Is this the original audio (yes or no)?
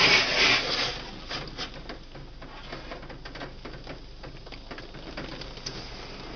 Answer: yes